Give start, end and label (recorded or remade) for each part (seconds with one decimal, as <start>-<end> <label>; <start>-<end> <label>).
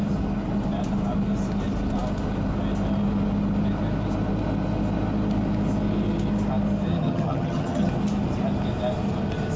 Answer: 0.0-6.9 recorded; 6.9-7.9 remade; 7.9-9.6 recorded